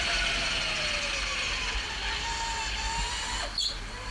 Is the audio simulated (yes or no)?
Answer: no